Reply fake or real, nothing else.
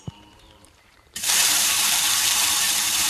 fake